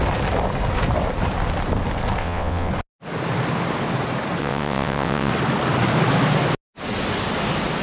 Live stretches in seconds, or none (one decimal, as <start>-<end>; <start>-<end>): 0.0-2.2; 2.7-4.4; 5.3-7.8